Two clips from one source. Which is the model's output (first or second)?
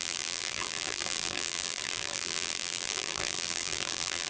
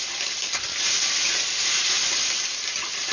first